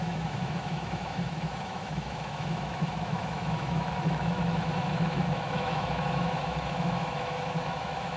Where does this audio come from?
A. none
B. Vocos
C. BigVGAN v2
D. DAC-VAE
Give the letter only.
D